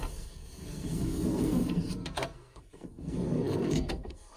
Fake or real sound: fake